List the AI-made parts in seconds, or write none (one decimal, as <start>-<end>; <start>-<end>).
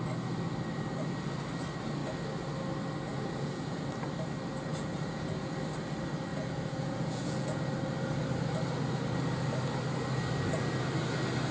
3.1-3.9; 4.7-5.5; 6.3-7.6